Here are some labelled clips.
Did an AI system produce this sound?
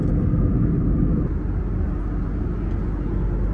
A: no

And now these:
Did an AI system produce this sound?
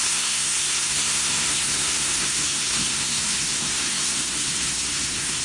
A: yes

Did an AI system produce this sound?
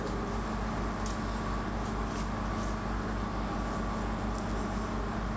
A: no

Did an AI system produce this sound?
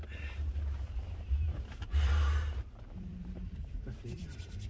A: yes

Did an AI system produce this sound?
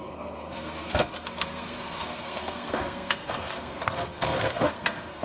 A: yes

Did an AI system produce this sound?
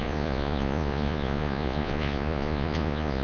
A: yes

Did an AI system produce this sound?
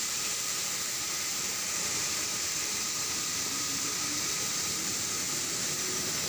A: yes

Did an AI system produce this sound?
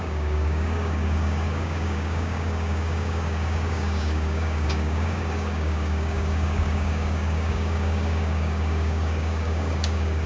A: yes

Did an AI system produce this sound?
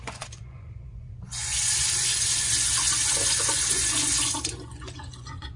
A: yes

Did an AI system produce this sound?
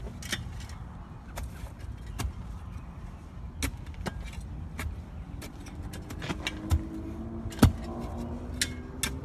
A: no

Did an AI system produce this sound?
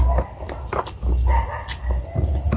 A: no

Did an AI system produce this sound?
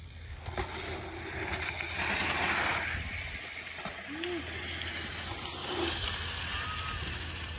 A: no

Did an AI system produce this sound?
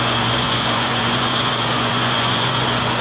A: yes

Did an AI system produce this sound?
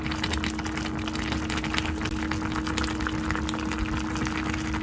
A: no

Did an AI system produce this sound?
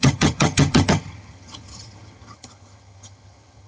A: yes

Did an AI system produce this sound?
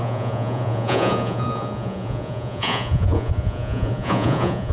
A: yes